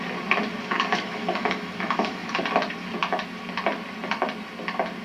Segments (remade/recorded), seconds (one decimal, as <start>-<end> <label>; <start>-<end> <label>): 0.0-0.6 recorded; 0.6-2.4 remade; 2.4-5.0 recorded